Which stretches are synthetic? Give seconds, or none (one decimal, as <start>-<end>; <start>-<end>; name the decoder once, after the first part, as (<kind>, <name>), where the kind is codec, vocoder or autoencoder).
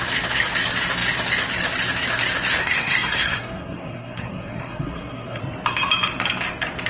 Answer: 2.6-5.4 (codec, SNAC)